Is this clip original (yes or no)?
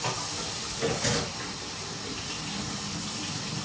yes